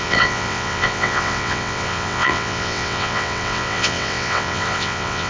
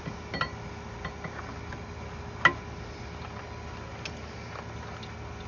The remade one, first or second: first